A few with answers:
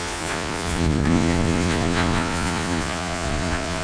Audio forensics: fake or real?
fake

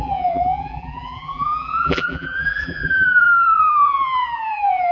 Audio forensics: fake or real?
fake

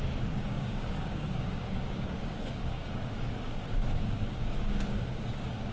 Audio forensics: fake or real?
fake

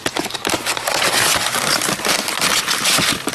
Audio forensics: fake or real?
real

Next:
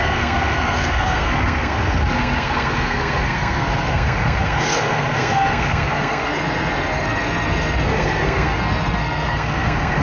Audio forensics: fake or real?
fake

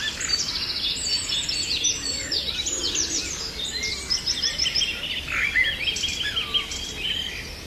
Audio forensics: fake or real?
real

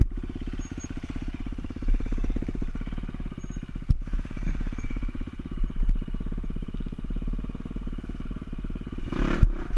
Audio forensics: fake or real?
fake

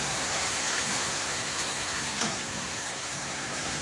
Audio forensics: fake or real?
fake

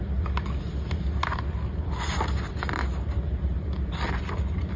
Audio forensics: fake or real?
real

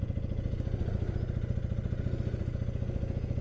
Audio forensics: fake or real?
real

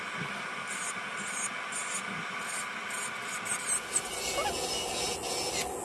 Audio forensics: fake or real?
real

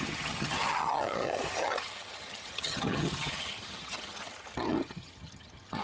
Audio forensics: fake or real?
fake